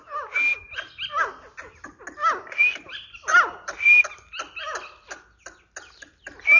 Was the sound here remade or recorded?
recorded